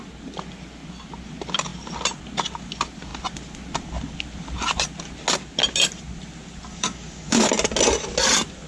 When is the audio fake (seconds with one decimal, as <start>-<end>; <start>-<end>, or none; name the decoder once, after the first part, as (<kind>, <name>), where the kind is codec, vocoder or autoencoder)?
6.7-7.5 (codec, DAC)